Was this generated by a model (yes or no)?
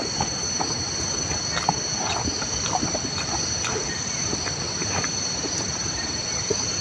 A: no